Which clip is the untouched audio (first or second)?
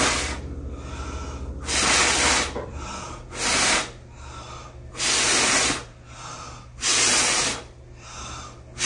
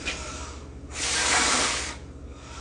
first